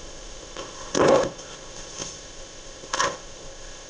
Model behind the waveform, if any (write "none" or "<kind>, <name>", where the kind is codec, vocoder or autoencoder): codec, ZipCodec